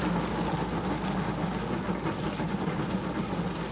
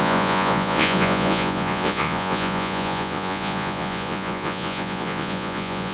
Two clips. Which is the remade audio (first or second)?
second